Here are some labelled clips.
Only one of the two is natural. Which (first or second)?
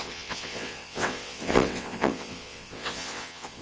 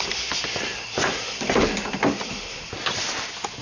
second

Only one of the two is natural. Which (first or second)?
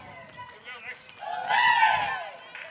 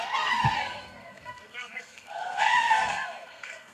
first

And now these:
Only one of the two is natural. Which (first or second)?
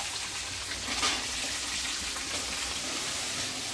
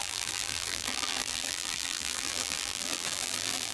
first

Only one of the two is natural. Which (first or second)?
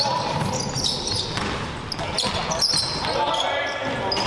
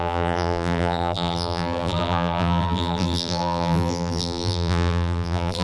first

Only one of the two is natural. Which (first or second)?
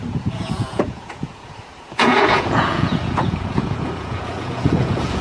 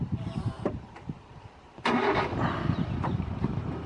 second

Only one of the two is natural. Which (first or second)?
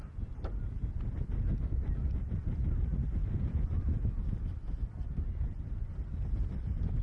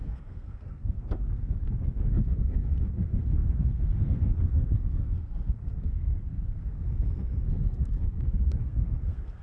first